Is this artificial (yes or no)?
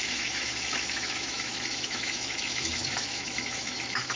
yes